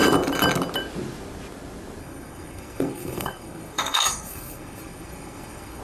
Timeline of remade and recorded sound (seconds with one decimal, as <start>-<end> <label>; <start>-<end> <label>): 0.0-2.0 recorded; 2.0-5.8 remade